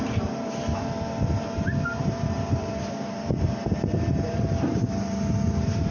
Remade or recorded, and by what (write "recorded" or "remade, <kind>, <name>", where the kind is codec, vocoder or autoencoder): remade, vocoder, BigVGAN v2